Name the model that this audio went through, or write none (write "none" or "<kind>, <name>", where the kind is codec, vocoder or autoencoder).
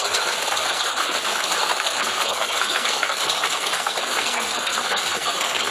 codec, SNAC